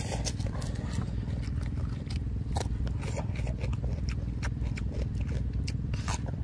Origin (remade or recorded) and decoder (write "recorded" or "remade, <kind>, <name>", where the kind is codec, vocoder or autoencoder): recorded